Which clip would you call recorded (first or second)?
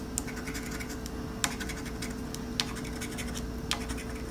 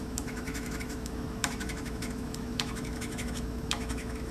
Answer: first